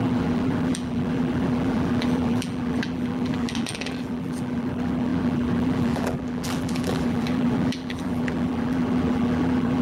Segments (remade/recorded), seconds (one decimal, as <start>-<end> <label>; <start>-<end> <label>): 0.0-9.8 remade